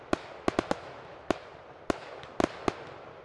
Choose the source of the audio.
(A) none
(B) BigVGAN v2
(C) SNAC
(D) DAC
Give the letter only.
A